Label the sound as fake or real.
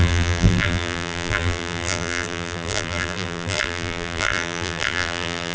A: fake